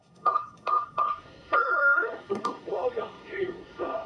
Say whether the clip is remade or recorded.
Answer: remade